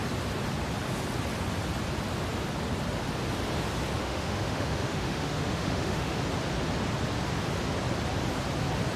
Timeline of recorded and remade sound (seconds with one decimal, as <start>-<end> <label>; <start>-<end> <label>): 0.0-4.0 recorded; 4.0-6.2 remade; 6.2-9.0 recorded